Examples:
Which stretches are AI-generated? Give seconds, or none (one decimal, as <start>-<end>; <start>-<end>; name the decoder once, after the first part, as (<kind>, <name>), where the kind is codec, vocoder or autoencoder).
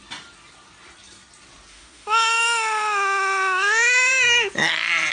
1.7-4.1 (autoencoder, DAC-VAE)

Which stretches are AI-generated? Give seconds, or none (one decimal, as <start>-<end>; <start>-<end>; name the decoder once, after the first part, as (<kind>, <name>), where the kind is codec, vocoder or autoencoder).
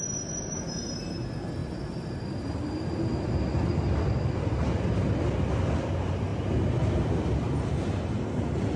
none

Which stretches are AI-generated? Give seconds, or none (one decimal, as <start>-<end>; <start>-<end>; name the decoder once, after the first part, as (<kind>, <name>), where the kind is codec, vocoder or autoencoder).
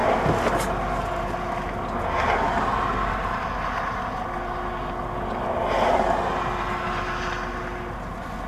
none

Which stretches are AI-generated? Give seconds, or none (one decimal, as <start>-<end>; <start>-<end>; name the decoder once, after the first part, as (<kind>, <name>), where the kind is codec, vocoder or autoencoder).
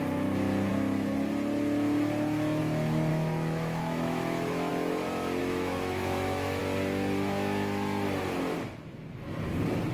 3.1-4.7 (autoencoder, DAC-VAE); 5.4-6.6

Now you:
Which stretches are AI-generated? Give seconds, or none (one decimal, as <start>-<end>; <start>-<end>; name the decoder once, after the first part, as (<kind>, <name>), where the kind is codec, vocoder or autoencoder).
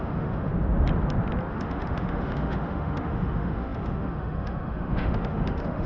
0.0-0.5 (autoencoder, DAC-VAE); 1.5-5.9